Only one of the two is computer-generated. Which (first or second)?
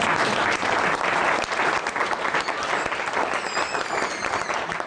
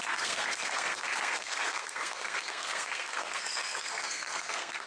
second